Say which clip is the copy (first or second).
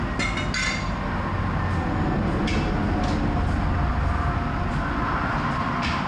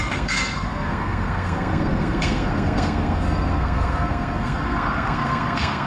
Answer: second